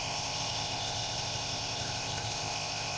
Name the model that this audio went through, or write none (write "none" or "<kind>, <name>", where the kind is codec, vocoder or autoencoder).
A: codec, ZipCodec